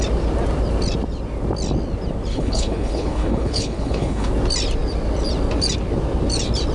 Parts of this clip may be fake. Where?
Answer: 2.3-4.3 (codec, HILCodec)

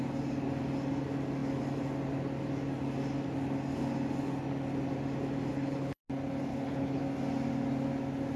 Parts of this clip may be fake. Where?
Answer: 5.5-6.0 (codec, HILCodec); 6.5-7.0

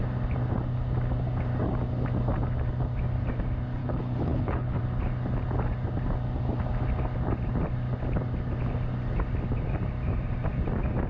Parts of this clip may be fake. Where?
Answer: 3.8-4.8 (codec, HILCodec)

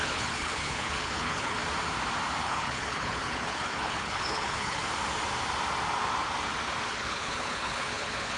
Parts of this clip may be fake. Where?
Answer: 0.0-1.6 (codec, HILCodec); 2.4-4.8; 6.9-8.4

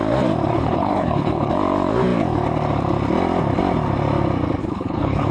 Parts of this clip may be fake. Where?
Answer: 0.5-1.5 (codec, HILCodec); 4.6-5.3